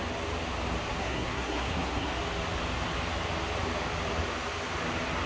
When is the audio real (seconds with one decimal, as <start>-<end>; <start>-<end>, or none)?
0.0-1.0; 2.1-5.3